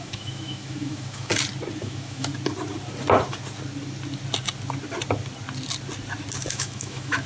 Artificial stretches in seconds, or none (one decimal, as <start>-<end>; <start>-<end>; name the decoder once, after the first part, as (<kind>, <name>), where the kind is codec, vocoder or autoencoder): 0.0-1.3 (autoencoder, DAC-VAE); 1.8-2.3; 6.5-7.3